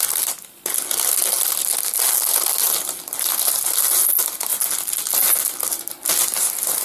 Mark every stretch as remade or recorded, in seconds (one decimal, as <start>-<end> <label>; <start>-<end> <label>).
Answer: 0.0-6.8 recorded